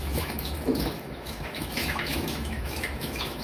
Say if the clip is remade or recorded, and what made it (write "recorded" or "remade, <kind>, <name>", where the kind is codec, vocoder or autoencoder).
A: remade, autoencoder, DAC-VAE